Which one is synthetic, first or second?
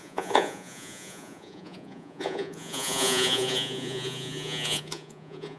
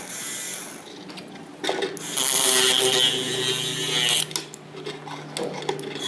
first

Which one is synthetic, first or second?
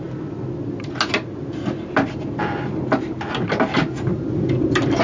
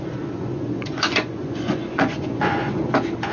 second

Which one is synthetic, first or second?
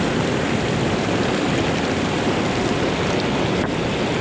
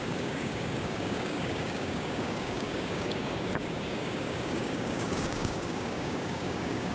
second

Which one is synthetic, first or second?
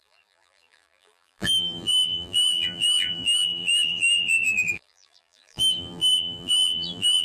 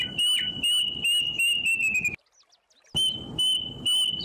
first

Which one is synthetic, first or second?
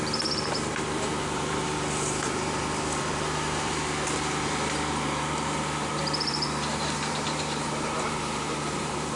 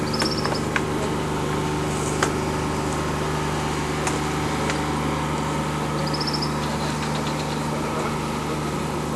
first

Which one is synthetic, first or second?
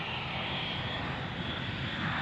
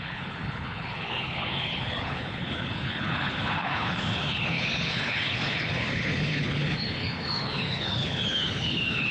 second